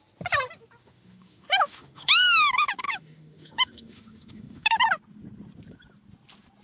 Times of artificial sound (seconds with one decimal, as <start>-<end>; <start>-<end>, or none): 0.8-4.8